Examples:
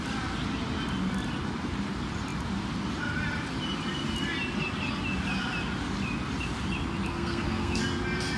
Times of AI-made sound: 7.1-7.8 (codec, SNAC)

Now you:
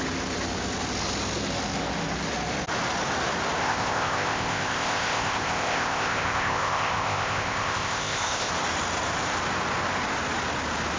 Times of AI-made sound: 3.6-8.5 (codec, ZipCodec)

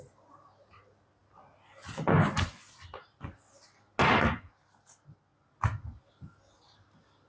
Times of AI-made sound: none